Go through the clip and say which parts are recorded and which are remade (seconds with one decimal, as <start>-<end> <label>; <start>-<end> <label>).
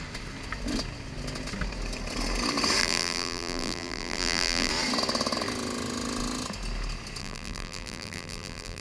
0.0-2.8 recorded; 2.8-4.7 remade; 4.7-7.2 recorded; 7.2-8.8 remade